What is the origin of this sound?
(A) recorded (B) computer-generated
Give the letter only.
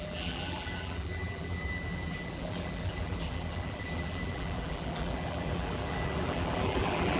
B